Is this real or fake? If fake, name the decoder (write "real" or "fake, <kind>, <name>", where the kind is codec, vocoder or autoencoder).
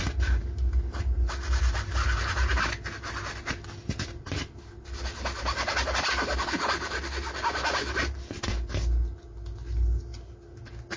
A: real